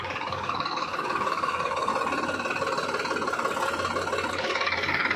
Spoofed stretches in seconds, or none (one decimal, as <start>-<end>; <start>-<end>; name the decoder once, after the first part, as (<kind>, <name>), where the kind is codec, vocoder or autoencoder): 0.0-1.9 (codec, DAC); 4.3-5.2